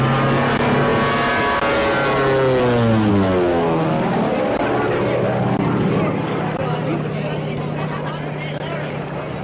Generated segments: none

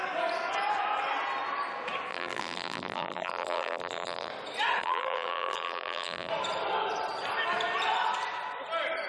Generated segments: 2.1-4.3 (vocoder, BigVGAN v2); 4.8-6.3

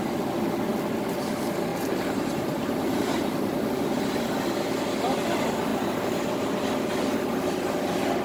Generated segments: 1.7-4.8 (vocoder, BigVGAN v2); 5.7-6.4